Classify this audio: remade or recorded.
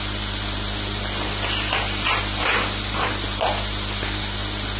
recorded